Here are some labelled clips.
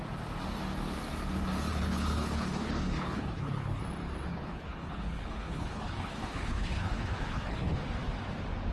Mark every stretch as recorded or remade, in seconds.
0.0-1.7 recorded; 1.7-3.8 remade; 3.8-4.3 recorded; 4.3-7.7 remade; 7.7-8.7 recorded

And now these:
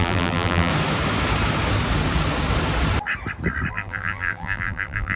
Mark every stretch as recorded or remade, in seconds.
0.0-0.7 remade; 0.7-3.7 recorded; 3.7-5.2 remade

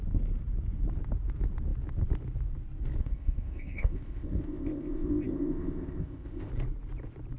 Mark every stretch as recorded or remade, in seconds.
0.0-3.0 recorded; 3.0-6.5 remade; 6.5-7.4 recorded